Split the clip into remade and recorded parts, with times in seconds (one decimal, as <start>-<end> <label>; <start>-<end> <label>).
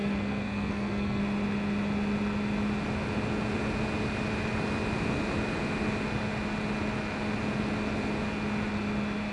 0.0-1.2 remade; 1.2-9.3 recorded